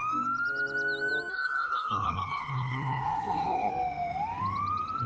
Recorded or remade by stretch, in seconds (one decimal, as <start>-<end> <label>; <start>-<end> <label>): 0.0-1.3 recorded; 1.3-3.7 remade; 3.7-5.1 recorded